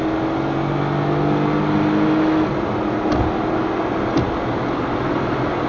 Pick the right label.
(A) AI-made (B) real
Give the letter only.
B